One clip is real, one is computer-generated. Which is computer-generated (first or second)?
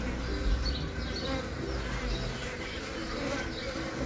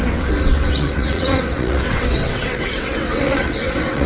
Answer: second